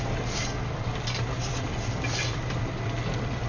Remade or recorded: remade